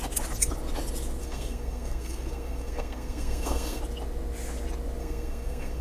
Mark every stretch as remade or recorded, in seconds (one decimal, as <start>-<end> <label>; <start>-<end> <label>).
0.0-1.2 recorded; 1.2-3.8 remade; 3.8-5.0 recorded; 5.0-5.8 remade